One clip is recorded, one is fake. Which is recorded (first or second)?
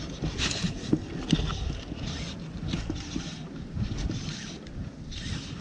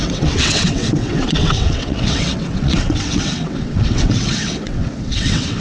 first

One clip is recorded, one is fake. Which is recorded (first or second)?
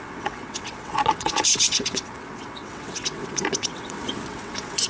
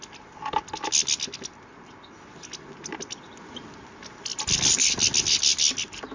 second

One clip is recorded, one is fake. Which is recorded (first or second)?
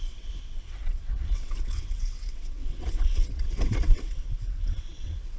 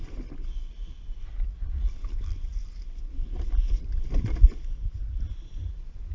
second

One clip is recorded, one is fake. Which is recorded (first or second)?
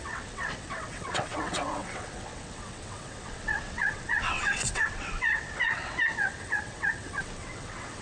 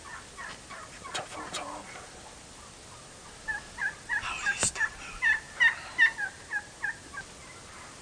second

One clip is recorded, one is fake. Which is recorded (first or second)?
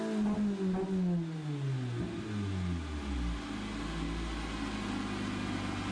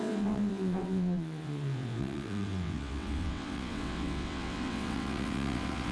first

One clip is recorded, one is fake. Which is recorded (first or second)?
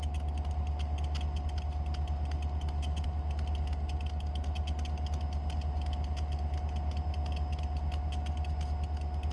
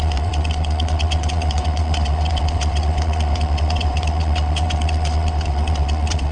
first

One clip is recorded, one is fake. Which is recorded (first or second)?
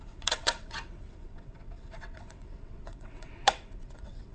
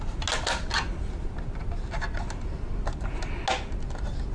second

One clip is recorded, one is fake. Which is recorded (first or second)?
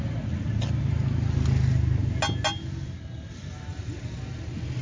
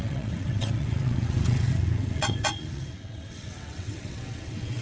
first